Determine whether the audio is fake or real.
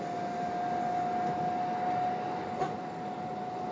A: real